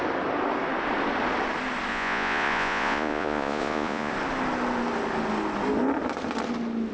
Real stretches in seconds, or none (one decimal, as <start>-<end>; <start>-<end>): 0.0-1.9; 4.1-6.9